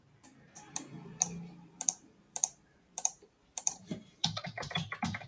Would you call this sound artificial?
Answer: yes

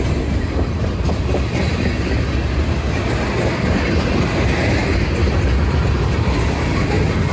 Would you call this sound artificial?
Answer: no